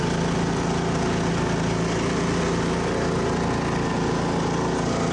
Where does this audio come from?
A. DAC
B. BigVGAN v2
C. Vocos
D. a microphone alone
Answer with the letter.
D